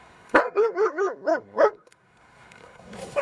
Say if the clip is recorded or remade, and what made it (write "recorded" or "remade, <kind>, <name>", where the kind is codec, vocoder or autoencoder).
remade, codec, SNAC